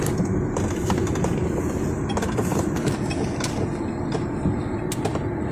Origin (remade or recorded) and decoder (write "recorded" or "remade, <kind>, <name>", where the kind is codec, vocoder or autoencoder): recorded